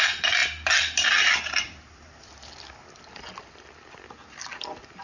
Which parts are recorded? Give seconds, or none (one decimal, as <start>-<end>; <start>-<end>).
0.0-5.0